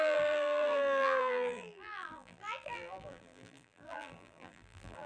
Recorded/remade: remade